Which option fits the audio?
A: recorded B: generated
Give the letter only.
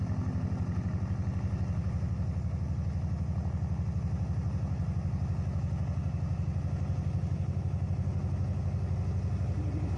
A